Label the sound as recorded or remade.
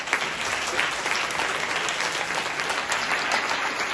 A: recorded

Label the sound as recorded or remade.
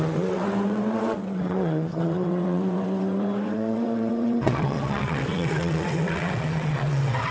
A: remade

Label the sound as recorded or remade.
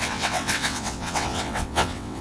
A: remade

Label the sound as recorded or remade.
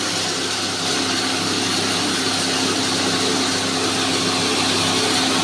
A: recorded